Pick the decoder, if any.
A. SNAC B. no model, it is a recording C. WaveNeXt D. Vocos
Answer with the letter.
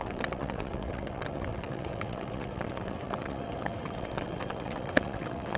C